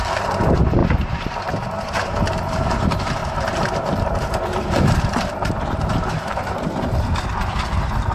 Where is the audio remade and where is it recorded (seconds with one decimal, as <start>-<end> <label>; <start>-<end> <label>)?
0.0-7.3 remade; 7.3-8.1 recorded